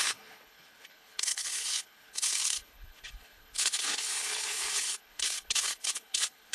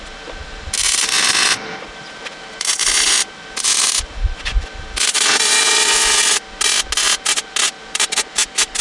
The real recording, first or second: second